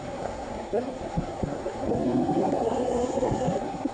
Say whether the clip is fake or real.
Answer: fake